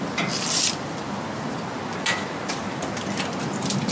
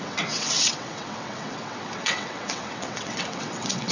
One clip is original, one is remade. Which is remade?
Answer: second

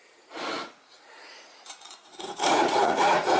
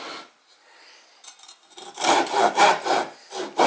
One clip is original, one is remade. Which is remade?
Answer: first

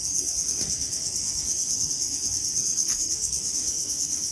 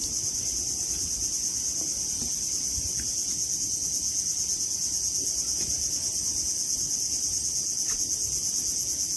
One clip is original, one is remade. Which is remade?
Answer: first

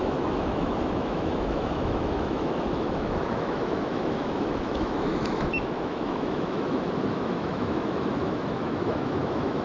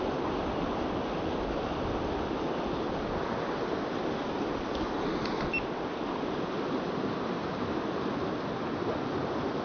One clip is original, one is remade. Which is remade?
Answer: first